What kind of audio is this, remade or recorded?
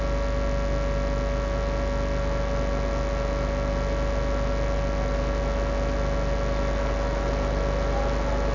recorded